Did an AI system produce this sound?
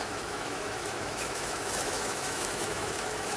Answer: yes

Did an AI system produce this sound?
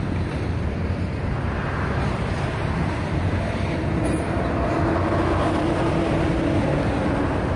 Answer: no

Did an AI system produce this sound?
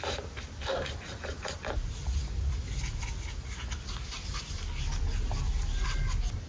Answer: no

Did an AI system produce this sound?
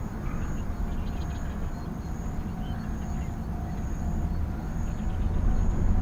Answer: no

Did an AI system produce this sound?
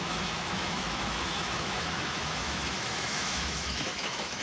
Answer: yes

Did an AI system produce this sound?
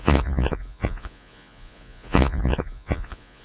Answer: yes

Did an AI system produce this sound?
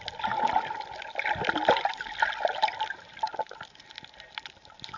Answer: no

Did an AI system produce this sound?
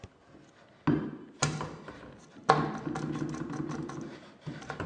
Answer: no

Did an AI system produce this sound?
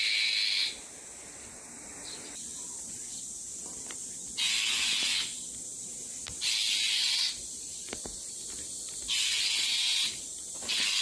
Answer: no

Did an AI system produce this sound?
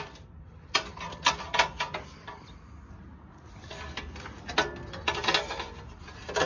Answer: no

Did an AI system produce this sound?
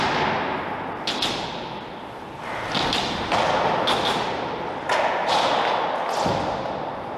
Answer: no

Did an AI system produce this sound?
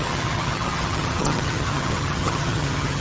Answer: yes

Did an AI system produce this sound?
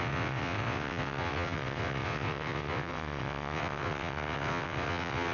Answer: yes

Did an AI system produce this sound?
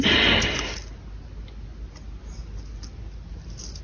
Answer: no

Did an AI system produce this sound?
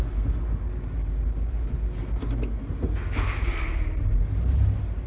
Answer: no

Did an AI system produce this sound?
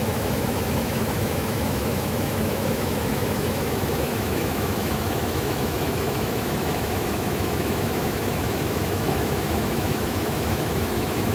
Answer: yes